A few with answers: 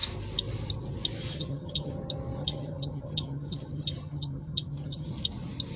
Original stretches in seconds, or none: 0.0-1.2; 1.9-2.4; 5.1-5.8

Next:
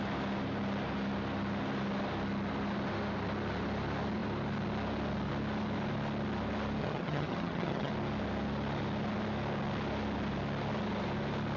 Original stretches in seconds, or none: 0.0-6.8; 7.9-11.6

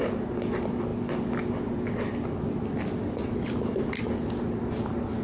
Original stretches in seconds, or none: 0.0-5.2

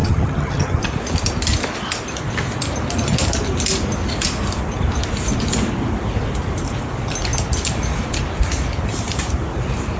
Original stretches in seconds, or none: 0.8-10.0

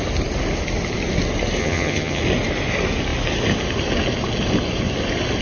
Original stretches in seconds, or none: 0.0-1.6; 2.2-5.4

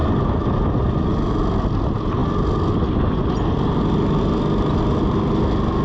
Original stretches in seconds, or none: 0.0-5.8